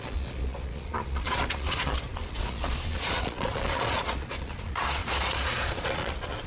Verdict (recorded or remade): remade